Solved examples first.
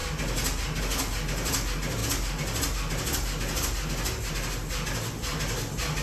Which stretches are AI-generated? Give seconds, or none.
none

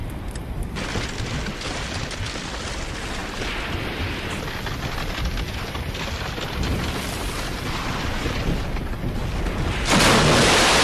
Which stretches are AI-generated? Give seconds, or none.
none

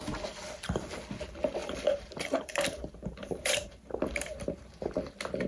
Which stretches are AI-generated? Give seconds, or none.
1.6-4.9 (vocoder, BigVGAN v2)